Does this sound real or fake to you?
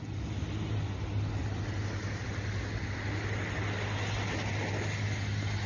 real